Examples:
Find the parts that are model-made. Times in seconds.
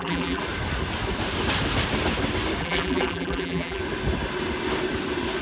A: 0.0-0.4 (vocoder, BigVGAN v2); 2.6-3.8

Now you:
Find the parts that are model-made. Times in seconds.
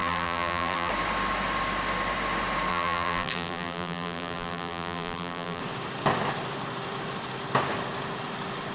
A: 0.0-0.9 (vocoder, BigVGAN v2); 2.7-5.6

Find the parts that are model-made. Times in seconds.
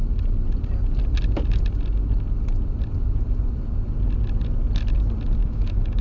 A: 5.4-6.0 (autoencoder, DAC-VAE)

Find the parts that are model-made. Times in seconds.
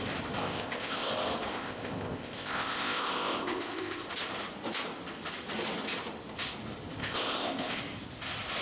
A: 0.4-1.1 (codec, ZipCodec); 1.5-4.1; 7.0-7.8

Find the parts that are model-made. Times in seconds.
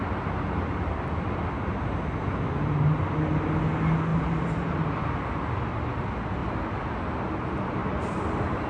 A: 4.1-4.9 (vocoder, BigVGAN v2); 7.8-8.7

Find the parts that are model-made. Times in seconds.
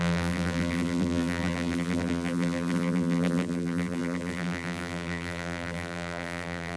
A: 0.0-6.8 (vocoder, BigVGAN v2)